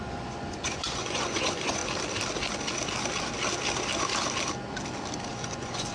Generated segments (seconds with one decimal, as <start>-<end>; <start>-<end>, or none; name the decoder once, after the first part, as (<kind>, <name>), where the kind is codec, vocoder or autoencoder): 0.0-1.8 (vocoder, Vocos); 5.3-5.9